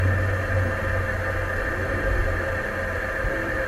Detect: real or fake real